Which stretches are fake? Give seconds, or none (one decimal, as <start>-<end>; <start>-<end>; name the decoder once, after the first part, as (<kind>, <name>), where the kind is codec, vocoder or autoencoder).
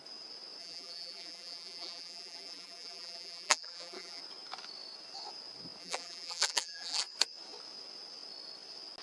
0.6-4.2 (vocoder, BigVGAN v2); 5.8-7.0